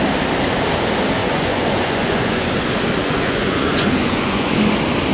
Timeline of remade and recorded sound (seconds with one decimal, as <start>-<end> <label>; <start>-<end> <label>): 0.0-1.2 recorded; 1.2-2.5 remade; 2.5-3.0 recorded; 3.0-4.5 remade; 4.5-5.1 recorded